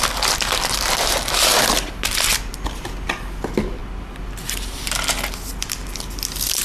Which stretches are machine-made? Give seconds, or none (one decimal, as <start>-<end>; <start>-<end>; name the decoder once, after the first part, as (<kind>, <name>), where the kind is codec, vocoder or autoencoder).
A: none